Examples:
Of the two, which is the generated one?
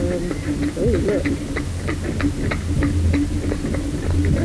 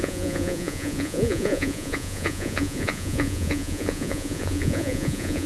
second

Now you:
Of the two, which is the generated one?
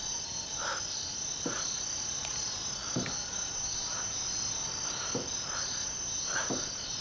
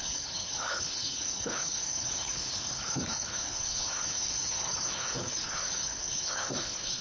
second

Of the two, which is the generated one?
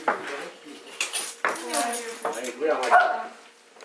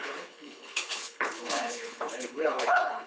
second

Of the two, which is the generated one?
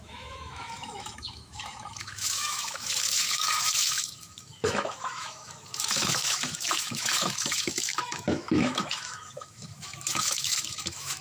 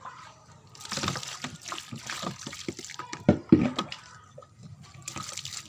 first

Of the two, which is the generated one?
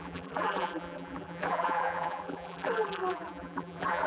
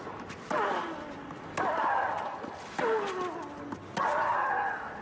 first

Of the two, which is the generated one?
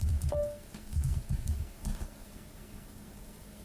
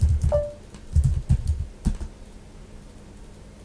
first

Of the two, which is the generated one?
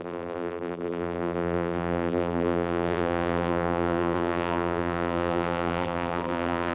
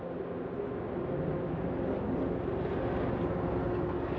first